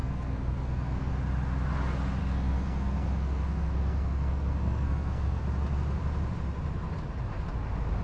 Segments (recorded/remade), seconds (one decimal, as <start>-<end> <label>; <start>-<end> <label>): 0.0-1.1 remade; 1.1-2.2 recorded; 2.2-5.4 remade; 5.4-8.0 recorded